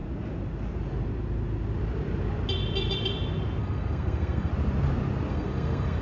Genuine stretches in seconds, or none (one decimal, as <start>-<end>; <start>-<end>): 0.0-3.6; 4.5-5.3